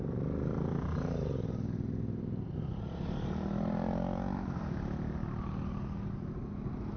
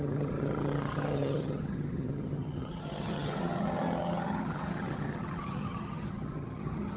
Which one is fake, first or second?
second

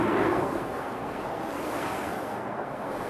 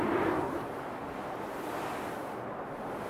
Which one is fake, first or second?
first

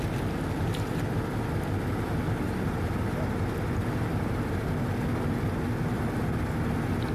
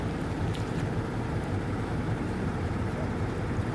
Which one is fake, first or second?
second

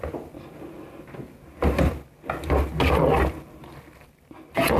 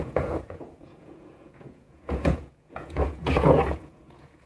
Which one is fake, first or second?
second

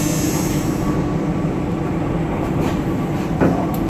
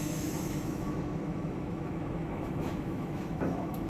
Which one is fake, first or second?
second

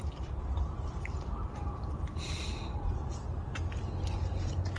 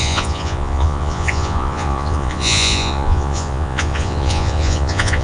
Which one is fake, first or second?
second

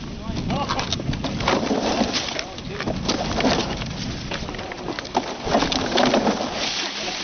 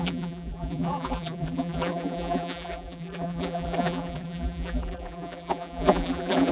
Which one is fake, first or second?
second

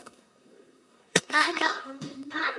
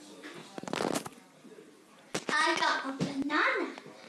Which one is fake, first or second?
first